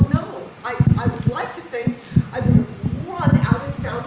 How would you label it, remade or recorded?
recorded